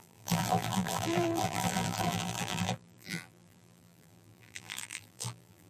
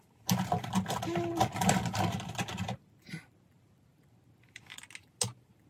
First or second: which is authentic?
second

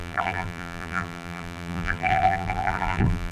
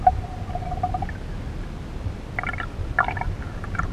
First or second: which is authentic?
second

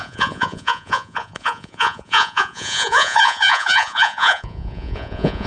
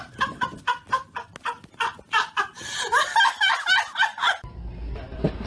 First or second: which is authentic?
second